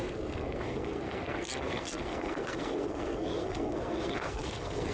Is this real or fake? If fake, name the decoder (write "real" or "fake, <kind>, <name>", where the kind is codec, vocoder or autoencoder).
fake, codec, SNAC